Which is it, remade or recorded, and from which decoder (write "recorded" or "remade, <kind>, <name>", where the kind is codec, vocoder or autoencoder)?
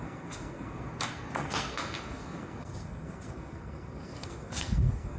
remade, codec, SNAC